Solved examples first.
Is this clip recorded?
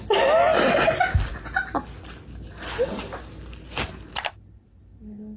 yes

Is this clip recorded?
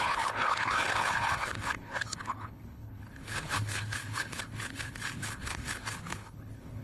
no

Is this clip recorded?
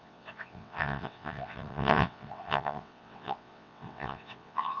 no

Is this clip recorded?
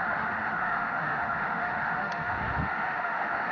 no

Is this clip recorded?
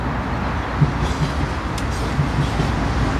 yes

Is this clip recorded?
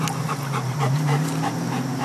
yes